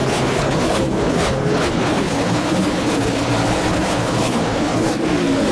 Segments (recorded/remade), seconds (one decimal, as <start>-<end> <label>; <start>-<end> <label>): 0.0-3.3 remade; 3.3-3.7 recorded; 3.7-4.9 remade; 4.9-5.5 recorded